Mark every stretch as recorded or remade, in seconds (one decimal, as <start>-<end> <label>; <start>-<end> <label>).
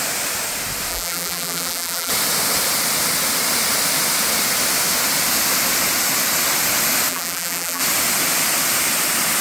0.0-0.9 recorded; 0.9-2.1 remade; 2.1-7.1 recorded; 7.1-7.8 remade; 7.8-9.4 recorded